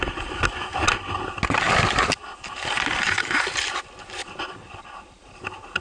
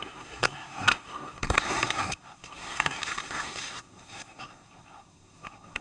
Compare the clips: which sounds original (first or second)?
first